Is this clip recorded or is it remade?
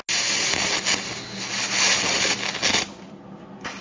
recorded